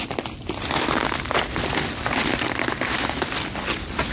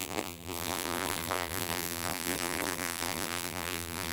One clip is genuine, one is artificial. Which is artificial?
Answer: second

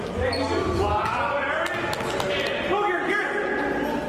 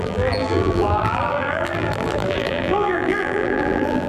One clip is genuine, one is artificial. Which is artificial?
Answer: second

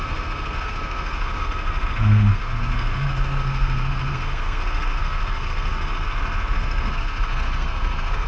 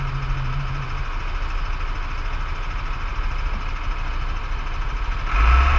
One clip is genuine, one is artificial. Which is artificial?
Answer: first